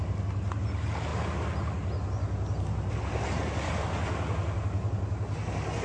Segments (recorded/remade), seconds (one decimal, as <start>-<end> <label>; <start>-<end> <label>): 0.0-5.8 recorded